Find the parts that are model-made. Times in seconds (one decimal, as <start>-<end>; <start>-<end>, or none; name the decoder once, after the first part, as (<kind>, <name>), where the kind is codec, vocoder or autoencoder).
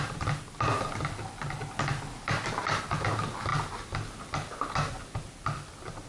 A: none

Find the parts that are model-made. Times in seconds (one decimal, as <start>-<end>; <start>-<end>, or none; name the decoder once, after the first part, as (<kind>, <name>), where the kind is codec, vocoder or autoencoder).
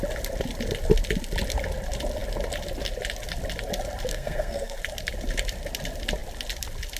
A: 4.1-4.8 (codec, SNAC)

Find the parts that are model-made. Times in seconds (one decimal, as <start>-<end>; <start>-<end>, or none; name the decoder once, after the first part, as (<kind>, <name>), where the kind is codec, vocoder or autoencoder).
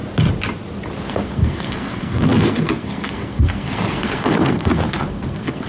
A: 1.1-5.7 (codec, SNAC)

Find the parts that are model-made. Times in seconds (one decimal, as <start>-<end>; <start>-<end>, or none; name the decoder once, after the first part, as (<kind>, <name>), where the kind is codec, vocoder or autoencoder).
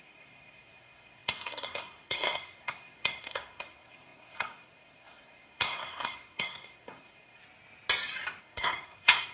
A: 0.0-7.4 (codec, SNAC); 8.4-9.3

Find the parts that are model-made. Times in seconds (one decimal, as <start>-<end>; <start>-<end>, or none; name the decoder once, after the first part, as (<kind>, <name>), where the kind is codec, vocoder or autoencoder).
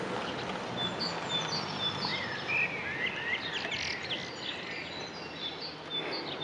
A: none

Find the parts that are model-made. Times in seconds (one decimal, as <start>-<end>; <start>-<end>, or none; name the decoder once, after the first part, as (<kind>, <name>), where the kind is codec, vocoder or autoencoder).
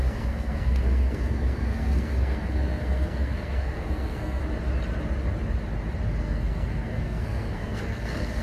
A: 0.0-4.4 (codec, SNAC); 6.2-8.4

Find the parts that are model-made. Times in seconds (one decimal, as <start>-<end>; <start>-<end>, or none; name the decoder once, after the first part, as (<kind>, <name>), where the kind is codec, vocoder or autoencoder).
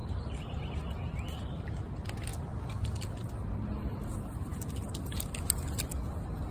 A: none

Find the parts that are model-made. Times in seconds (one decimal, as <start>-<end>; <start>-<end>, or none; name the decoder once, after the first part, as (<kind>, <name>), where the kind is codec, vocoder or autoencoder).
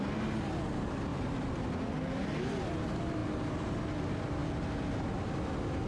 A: none